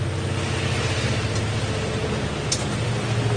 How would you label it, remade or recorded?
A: recorded